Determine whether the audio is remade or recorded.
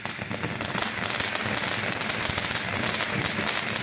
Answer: recorded